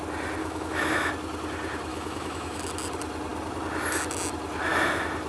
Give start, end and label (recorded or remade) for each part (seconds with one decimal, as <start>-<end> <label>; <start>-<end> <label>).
0.0-0.4 recorded; 0.4-1.1 remade; 1.1-1.9 recorded; 1.9-2.6 remade; 2.6-5.3 recorded